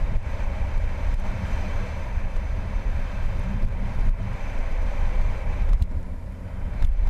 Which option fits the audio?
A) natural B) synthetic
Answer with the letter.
B